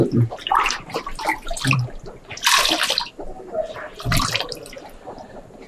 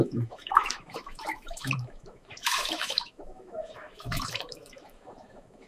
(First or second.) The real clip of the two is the first